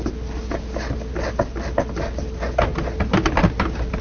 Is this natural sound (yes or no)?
yes